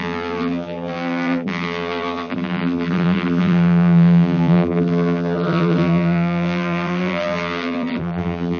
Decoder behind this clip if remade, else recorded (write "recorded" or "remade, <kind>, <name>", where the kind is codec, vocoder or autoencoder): remade, vocoder, BigVGAN v2